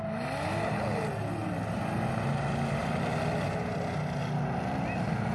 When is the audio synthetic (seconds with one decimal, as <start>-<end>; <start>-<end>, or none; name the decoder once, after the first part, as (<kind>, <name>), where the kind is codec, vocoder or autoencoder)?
none